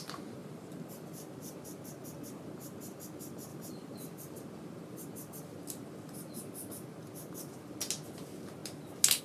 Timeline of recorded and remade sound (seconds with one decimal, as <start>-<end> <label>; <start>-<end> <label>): 0.0-0.4 recorded; 0.4-1.8 remade; 1.8-3.5 recorded; 3.5-6.7 remade; 6.7-9.2 recorded